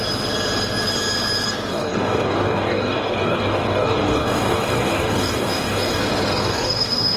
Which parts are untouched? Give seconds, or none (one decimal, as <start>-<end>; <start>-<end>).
0.0-1.7; 6.0-6.4